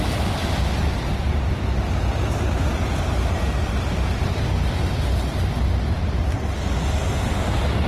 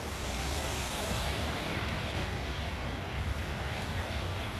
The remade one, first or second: second